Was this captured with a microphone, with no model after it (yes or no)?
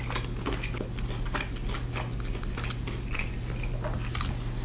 yes